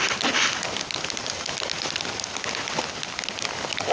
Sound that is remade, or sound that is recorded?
recorded